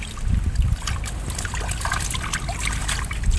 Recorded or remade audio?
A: recorded